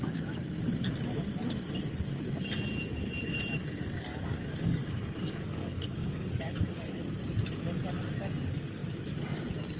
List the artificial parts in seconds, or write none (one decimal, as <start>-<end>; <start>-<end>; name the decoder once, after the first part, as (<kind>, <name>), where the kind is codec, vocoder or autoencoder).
4.1-6.9 (codec, DAC)